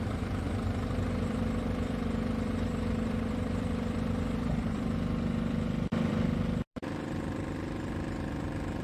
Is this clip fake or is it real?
fake